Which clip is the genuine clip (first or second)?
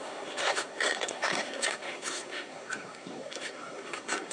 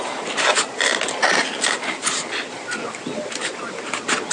second